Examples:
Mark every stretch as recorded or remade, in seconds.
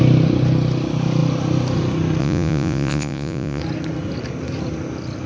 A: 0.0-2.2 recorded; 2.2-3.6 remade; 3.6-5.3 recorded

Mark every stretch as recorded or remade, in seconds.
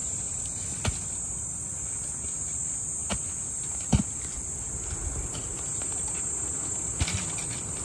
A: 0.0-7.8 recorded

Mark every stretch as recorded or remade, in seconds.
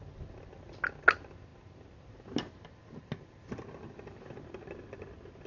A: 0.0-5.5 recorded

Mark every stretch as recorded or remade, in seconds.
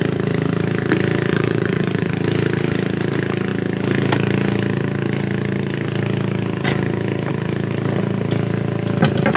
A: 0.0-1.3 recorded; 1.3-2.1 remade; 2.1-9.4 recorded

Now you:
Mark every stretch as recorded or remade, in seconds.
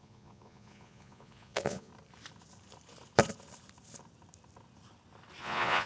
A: 0.0-1.9 remade; 1.9-5.4 recorded; 5.4-5.9 remade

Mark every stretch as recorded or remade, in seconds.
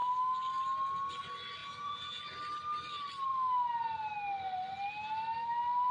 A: 0.0-1.6 recorded; 1.6-2.2 remade; 2.2-5.9 recorded